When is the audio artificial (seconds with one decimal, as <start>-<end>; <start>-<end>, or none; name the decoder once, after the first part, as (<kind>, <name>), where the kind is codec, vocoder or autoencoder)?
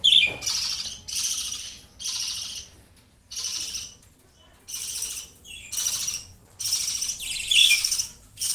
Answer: 7.6-8.5 (autoencoder, DAC-VAE)